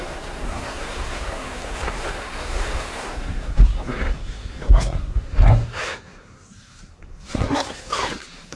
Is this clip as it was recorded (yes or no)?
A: no